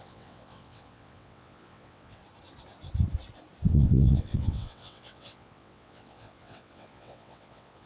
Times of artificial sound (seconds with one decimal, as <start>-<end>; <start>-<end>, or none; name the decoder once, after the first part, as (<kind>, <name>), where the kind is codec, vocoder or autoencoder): 0.0-2.2 (vocoder, WaveNeXt); 3.7-7.9